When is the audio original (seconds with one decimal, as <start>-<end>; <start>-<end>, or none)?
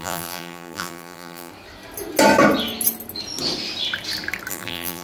1.5-4.5